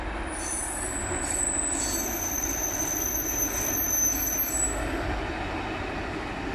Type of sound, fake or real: real